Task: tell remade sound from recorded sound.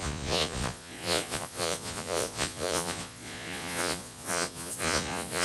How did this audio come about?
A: remade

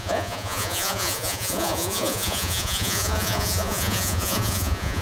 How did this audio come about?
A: remade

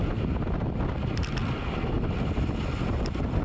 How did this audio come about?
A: recorded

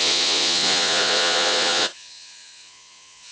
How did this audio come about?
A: remade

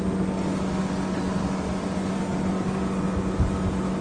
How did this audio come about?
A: recorded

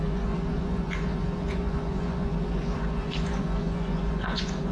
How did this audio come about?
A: remade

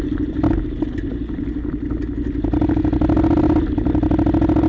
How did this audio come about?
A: recorded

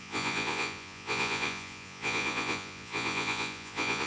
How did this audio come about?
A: remade